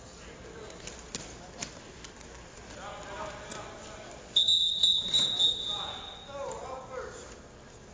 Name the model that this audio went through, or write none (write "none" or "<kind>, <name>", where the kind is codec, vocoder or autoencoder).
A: none